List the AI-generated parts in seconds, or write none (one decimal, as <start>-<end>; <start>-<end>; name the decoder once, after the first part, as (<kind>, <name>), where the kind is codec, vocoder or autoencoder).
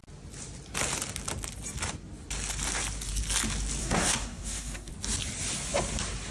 3.8-4.9 (codec, SNAC)